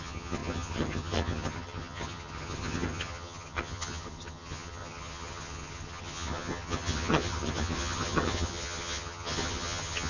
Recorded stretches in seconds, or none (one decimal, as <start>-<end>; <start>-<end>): none